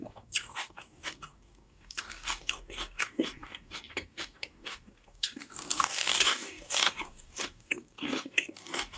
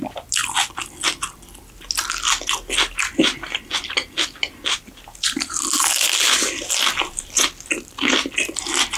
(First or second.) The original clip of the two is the second